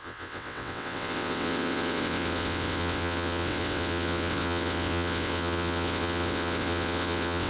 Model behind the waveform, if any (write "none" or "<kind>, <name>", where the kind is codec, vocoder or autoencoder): vocoder, WaveNeXt